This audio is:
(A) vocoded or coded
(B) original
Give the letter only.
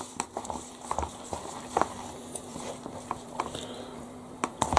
A